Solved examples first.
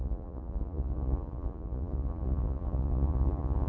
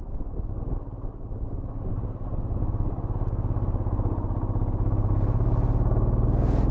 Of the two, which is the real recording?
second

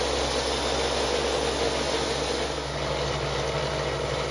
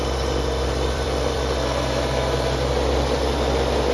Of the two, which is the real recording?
first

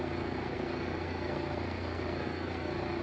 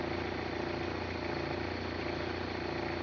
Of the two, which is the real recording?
second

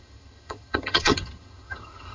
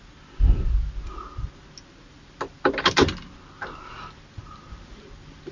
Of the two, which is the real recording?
second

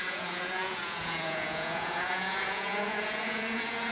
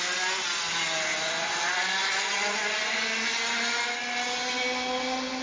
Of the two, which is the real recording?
second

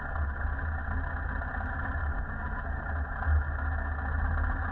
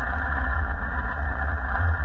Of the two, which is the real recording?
first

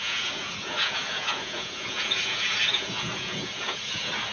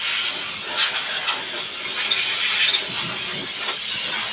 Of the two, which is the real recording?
second